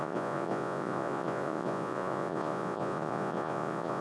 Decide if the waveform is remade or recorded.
remade